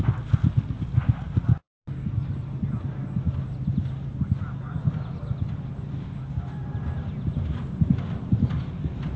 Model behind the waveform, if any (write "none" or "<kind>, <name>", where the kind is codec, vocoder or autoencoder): none